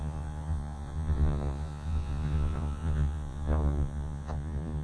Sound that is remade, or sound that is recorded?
remade